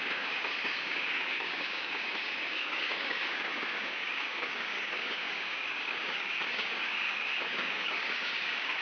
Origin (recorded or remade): remade